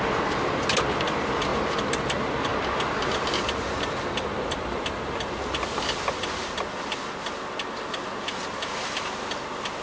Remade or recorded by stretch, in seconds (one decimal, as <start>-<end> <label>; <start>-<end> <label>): 0.0-9.8 recorded

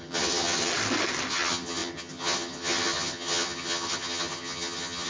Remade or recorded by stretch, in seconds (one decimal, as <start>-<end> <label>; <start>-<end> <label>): 0.0-0.7 remade; 0.7-1.3 recorded; 1.3-5.1 remade